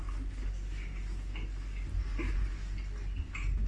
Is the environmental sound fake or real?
real